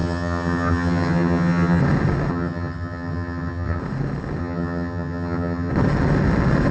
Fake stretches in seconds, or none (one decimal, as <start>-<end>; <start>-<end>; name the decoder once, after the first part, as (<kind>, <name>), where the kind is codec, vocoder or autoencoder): 0.0-1.8 (vocoder, HiFi-GAN); 2.3-3.8; 4.4-5.7